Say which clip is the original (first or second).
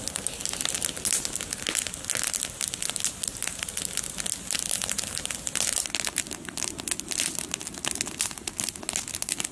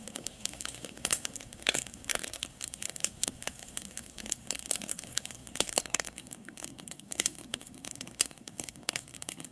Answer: first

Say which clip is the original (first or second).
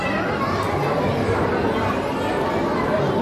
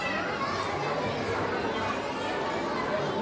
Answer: second